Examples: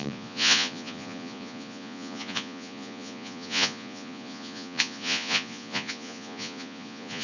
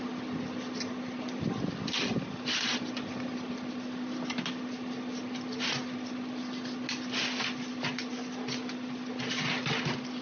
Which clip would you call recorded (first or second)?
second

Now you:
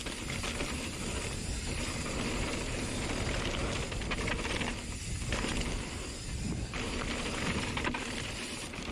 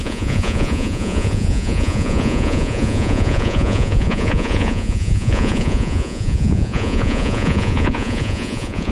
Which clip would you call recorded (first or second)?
first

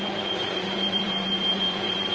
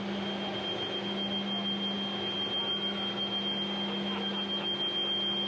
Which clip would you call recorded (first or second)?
second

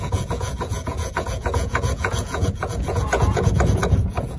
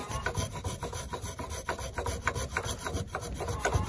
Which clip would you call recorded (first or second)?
second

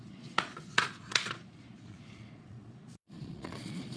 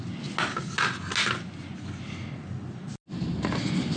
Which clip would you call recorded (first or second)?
second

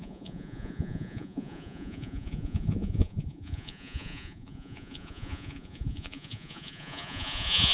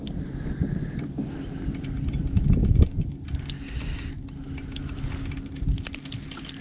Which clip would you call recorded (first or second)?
second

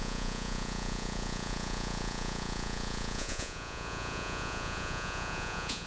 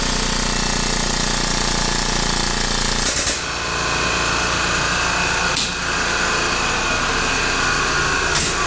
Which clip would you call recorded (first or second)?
second